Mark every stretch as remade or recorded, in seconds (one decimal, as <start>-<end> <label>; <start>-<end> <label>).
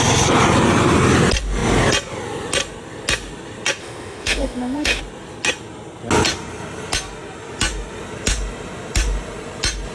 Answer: 0.0-3.8 recorded; 3.8-5.0 remade; 5.0-9.9 recorded